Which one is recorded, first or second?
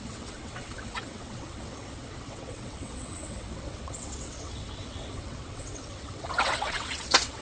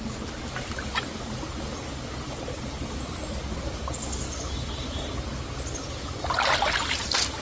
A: second